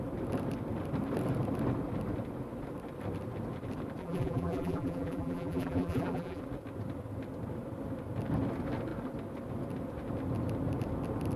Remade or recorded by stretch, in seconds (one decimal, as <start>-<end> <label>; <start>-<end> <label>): 0.0-4.0 recorded; 4.0-6.4 remade; 6.4-11.4 recorded

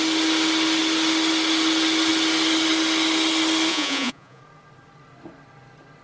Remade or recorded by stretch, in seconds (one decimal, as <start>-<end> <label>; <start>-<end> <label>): 0.0-3.7 recorded; 3.7-4.4 remade; 4.4-6.0 recorded

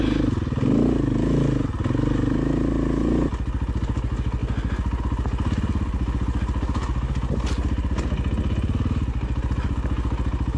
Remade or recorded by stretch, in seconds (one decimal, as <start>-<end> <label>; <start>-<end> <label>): 0.0-10.6 recorded

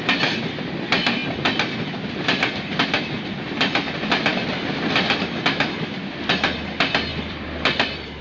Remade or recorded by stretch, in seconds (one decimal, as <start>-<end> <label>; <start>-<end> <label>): 0.0-7.1 recorded; 7.1-8.2 remade

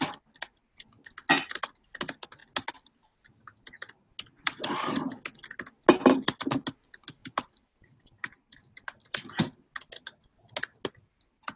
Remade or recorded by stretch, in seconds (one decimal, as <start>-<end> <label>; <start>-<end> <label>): 0.0-7.2 recorded; 7.2-9.1 remade; 9.1-11.6 recorded

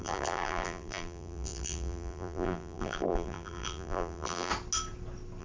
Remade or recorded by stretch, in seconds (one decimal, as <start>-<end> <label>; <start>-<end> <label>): 0.0-4.5 remade; 4.5-5.4 recorded

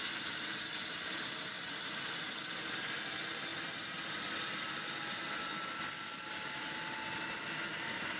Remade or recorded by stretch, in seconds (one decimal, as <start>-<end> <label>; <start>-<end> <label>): 0.0-8.2 recorded